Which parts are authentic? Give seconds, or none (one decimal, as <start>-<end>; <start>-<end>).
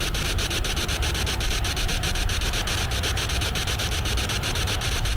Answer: 0.0-5.2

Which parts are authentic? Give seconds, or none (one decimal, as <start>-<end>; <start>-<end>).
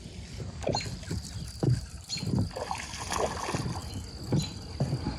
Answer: 0.0-5.2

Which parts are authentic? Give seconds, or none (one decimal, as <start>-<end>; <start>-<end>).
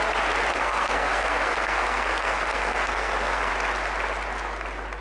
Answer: 0.0-0.5; 3.5-5.0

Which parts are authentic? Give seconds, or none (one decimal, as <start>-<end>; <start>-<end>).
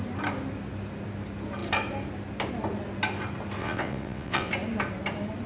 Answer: 0.0-3.6; 4.5-5.5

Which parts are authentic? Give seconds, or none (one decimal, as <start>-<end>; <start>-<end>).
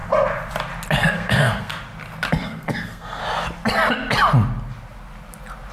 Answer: 0.0-1.0; 1.7-2.4; 3.2-5.7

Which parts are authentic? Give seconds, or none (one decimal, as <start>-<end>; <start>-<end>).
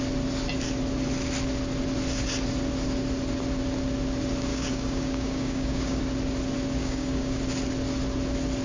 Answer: 0.0-4.5; 6.0-6.8; 7.4-8.6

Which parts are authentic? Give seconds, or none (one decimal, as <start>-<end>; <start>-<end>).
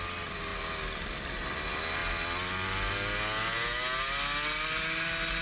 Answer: 0.0-5.4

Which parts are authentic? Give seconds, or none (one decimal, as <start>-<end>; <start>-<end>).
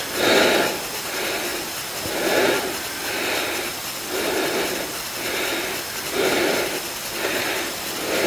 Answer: 0.0-8.3